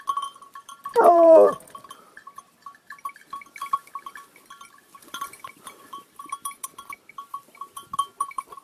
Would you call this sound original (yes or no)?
no